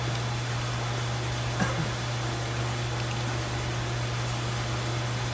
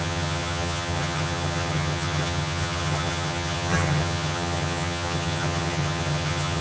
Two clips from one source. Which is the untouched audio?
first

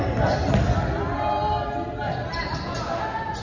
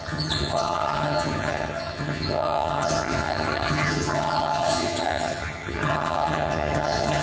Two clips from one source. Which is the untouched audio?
first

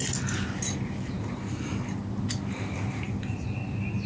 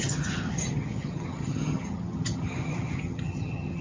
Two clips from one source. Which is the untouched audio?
first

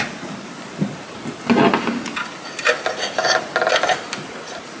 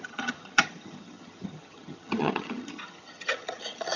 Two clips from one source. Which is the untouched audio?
first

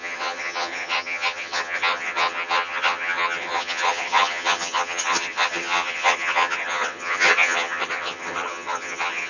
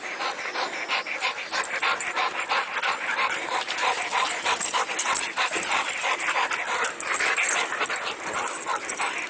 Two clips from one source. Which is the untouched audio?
second